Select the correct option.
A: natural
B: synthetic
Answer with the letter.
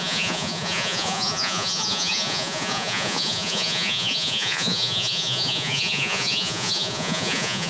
B